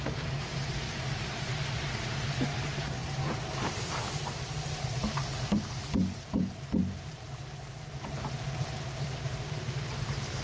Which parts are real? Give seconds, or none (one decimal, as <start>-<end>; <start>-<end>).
none